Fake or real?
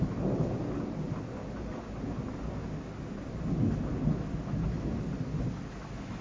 real